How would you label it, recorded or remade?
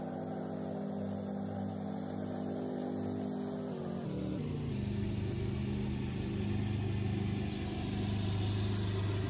recorded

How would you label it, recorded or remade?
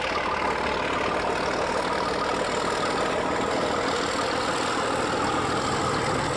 recorded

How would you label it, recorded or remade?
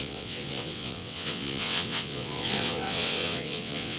remade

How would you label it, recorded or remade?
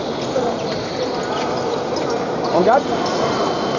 recorded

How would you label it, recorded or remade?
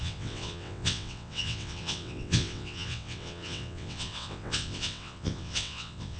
remade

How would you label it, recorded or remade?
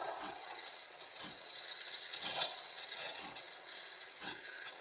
remade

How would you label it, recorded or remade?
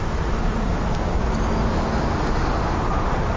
recorded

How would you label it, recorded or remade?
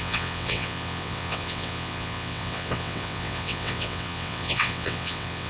remade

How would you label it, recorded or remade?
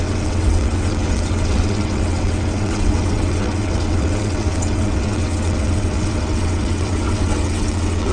remade